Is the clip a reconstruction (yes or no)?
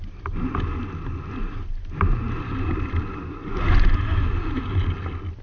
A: no